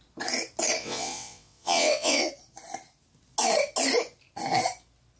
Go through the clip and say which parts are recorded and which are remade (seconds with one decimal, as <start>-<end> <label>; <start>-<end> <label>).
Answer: 0.0-0.8 recorded; 0.8-2.3 remade; 2.3-5.2 recorded